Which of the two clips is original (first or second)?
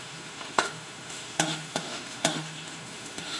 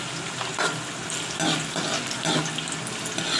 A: second